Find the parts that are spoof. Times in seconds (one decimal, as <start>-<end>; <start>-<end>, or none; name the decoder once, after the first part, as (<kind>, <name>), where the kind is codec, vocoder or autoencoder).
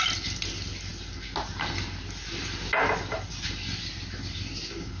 none